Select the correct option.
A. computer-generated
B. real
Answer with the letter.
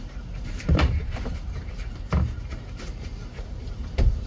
A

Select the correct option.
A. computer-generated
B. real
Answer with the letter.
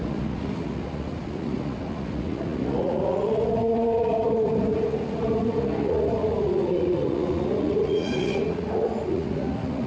A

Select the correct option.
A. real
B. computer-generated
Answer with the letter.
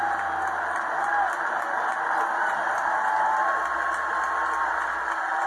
A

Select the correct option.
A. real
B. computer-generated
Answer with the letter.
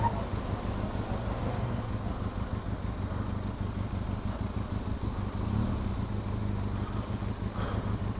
A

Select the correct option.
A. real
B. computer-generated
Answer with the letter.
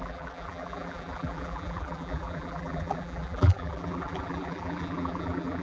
B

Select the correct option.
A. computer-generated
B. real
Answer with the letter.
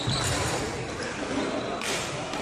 A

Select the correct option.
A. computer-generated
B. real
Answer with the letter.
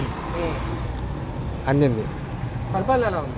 B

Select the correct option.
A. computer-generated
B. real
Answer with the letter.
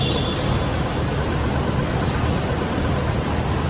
B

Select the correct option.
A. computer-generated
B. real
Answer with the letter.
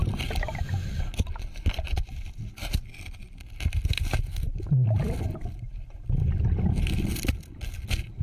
B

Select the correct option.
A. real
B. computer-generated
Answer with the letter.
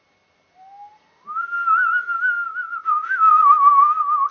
A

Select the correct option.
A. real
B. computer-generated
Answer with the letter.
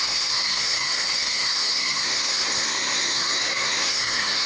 B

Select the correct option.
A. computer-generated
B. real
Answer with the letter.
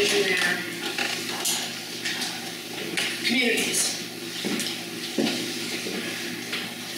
B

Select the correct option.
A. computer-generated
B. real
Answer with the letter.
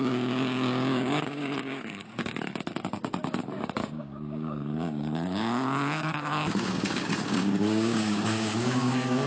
A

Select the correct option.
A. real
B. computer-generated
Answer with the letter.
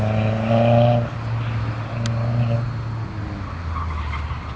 A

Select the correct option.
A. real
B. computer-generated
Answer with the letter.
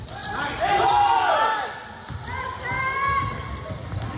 B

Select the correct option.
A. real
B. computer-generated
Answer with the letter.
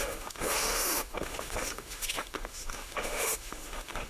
B